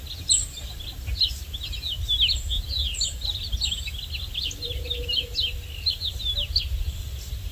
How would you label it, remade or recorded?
recorded